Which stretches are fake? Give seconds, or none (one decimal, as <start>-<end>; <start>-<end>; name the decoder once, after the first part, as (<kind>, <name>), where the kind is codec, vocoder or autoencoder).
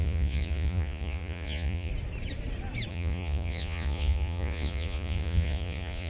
0.0-1.9 (vocoder, Vocos); 2.9-6.1